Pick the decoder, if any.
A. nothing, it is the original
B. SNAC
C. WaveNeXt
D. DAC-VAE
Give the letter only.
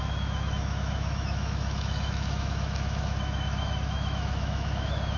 D